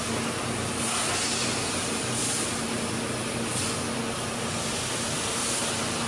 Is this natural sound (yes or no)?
yes